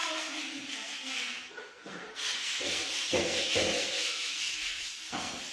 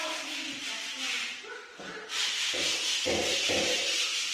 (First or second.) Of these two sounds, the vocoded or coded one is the first